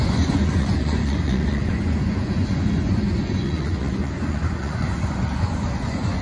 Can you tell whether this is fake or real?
fake